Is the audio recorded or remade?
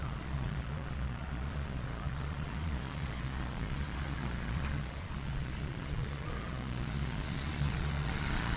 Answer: remade